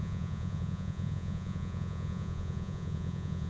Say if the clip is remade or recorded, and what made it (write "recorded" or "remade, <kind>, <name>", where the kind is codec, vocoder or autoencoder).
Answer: remade, vocoder, Vocos